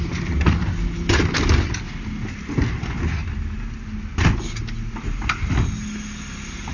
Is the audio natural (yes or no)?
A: yes